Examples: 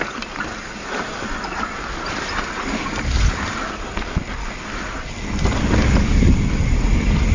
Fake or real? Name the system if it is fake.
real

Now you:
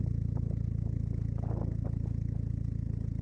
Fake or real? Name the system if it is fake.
real